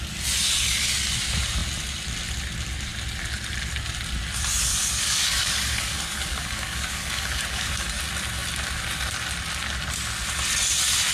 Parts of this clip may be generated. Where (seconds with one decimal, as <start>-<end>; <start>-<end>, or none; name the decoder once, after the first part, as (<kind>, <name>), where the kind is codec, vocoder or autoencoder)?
4.7-8.0 (codec, DAC)